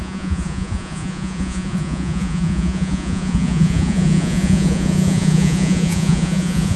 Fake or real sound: fake